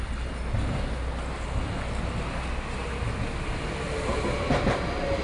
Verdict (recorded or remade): recorded